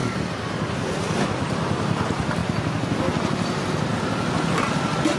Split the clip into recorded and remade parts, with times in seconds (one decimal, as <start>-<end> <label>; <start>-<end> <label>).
0.0-5.2 recorded